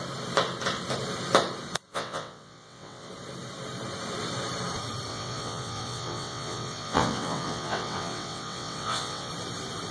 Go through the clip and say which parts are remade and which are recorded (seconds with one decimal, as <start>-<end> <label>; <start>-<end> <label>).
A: 0.0-1.9 recorded; 1.9-3.1 remade; 3.1-5.1 recorded; 5.1-9.3 remade; 9.3-9.9 recorded